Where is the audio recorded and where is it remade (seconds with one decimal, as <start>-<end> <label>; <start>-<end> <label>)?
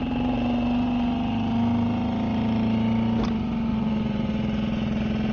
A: 0.0-3.7 recorded; 3.7-4.3 remade; 4.3-5.3 recorded